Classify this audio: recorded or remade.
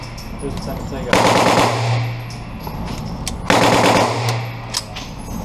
recorded